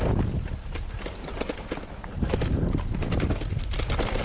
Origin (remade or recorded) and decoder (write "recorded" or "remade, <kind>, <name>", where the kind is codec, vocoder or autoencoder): recorded